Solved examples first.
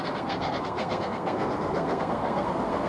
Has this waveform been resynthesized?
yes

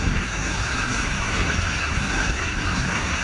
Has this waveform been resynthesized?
yes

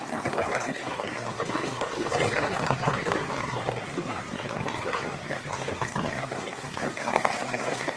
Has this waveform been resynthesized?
yes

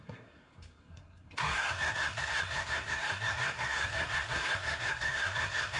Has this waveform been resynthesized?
yes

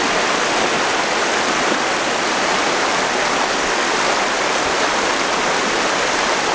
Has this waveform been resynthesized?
no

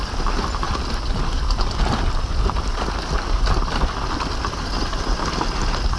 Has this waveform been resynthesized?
no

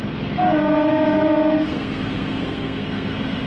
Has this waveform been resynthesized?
yes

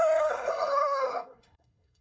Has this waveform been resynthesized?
yes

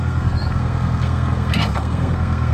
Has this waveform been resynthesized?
yes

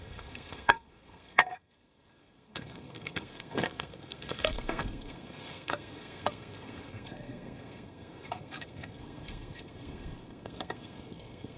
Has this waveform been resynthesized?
yes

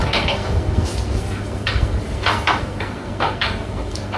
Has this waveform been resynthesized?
yes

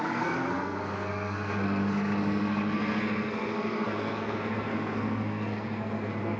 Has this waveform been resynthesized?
yes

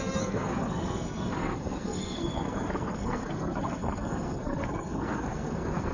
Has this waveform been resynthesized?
yes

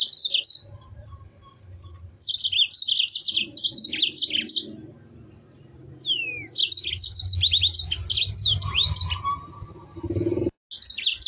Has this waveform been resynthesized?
no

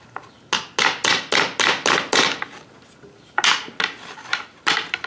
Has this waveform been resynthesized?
no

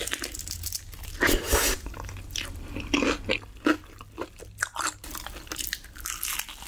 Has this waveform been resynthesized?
no